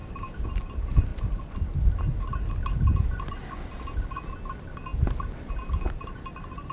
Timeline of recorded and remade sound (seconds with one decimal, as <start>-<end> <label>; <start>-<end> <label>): 0.0-0.5 remade; 0.5-6.7 recorded